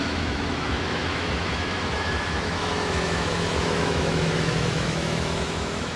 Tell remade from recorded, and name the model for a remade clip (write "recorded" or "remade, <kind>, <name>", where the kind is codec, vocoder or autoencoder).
remade, autoencoder, DAC-VAE